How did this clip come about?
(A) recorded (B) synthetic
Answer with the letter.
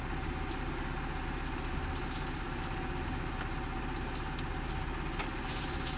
A